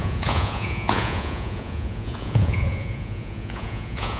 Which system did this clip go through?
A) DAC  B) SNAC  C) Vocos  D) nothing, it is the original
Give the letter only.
C